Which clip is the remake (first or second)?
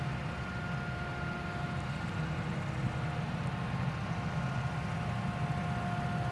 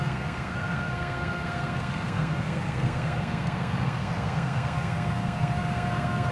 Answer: second